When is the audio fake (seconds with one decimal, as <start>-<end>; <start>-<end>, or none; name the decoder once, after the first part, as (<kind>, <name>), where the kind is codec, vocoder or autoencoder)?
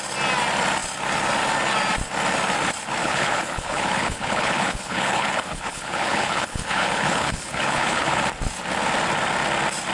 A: 3.0-8.2 (codec, HILCodec)